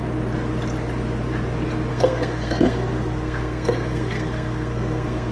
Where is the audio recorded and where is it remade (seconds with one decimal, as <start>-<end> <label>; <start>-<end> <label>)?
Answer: 0.0-1.9 recorded; 1.9-5.3 remade